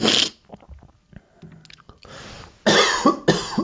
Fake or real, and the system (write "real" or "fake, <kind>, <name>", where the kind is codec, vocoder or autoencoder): real